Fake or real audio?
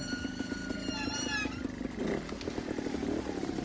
real